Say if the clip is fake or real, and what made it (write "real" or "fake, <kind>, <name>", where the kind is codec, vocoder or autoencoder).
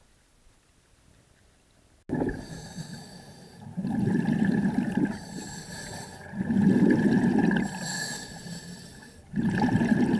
real